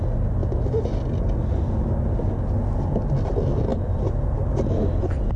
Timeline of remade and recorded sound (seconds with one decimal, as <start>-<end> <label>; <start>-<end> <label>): 0.0-5.4 recorded